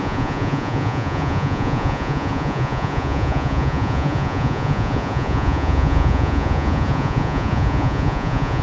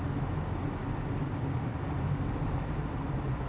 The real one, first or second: second